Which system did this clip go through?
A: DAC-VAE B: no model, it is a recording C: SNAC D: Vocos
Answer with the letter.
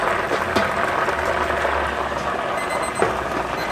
B